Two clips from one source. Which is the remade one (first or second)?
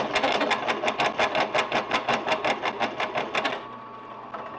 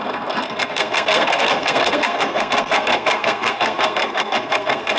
second